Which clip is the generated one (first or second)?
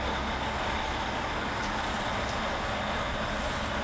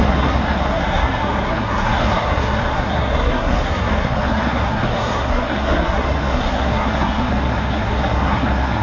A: second